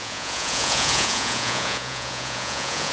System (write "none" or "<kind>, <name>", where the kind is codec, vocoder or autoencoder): vocoder, Vocos